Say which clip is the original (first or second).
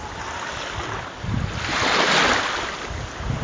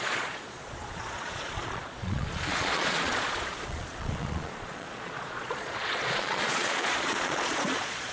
first